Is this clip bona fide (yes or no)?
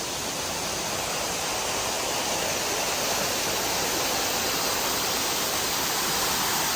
yes